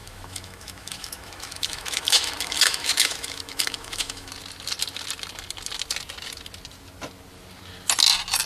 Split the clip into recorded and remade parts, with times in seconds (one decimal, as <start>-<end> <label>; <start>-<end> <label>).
0.0-4.3 remade; 4.3-8.5 recorded